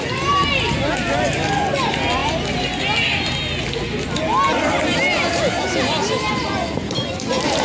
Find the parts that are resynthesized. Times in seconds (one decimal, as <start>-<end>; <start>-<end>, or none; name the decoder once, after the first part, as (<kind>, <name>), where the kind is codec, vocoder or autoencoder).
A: none